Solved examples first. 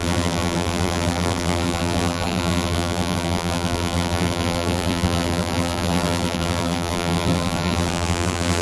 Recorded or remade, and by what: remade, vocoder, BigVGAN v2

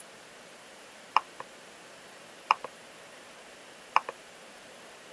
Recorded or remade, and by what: remade, vocoder, BigVGAN v2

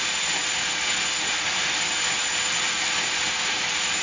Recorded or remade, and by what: remade, vocoder, BigVGAN v2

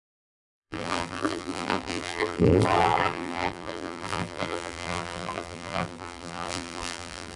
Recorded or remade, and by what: remade, vocoder, BigVGAN v2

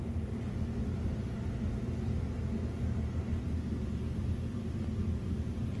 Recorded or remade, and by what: recorded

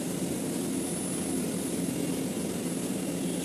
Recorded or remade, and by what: recorded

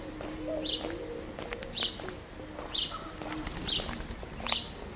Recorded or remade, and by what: recorded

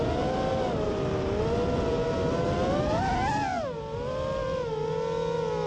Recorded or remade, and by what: recorded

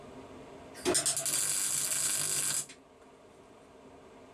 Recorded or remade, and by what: recorded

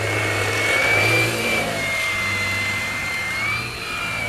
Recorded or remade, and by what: remade, vocoder, BigVGAN v2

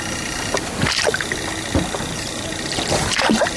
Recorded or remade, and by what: recorded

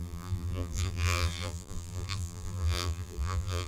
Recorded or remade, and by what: remade, vocoder, BigVGAN v2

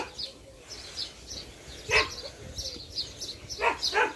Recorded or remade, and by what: recorded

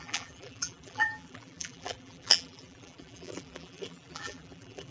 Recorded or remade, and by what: remade, vocoder, BigVGAN v2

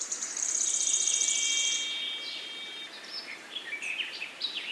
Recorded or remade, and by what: remade, vocoder, BigVGAN v2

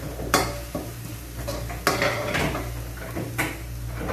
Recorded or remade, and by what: recorded